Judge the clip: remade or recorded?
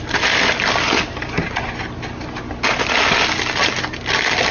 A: recorded